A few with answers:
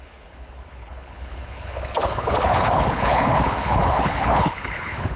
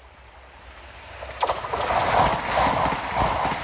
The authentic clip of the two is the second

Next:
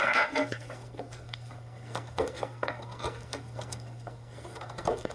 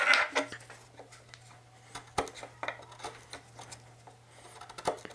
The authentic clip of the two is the second